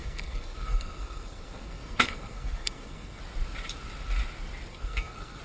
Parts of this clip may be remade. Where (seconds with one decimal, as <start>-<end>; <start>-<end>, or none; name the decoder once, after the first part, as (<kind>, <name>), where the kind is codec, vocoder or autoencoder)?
0.0-3.2 (codec, SNAC); 4.7-5.4